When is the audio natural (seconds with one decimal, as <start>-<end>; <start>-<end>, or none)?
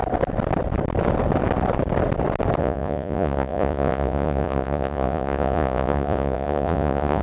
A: 0.0-2.6